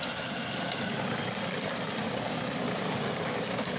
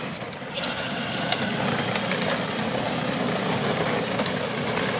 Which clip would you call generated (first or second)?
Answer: first